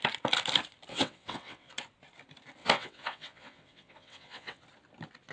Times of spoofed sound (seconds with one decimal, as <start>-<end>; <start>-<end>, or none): 0.9-1.7; 2.6-4.6

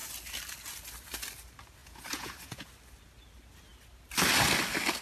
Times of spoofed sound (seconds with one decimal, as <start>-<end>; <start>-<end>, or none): 1.8-2.7

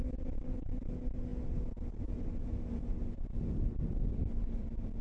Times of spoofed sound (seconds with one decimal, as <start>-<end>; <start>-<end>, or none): none

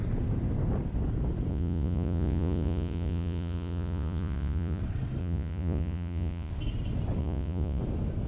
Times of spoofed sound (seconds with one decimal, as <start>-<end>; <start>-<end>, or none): 1.5-4.8; 5.2-6.5; 7.2-7.8

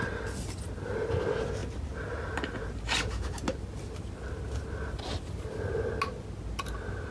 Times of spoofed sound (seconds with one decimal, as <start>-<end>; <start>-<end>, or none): none

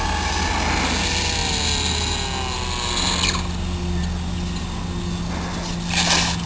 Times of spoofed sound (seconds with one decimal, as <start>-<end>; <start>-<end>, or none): none

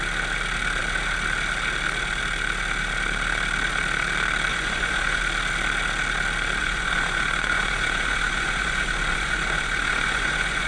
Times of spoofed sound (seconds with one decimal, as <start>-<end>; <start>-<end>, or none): 4.5-5.2; 6.6-10.7

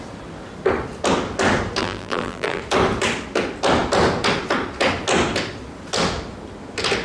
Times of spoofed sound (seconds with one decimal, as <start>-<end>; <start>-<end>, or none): 1.8-2.6